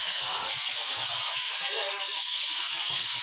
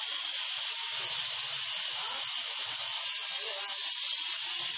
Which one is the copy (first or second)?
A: first